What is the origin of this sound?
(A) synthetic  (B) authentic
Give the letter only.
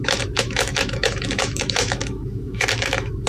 A